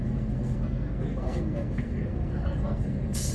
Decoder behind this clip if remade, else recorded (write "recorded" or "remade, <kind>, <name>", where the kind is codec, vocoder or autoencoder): remade, codec, SNAC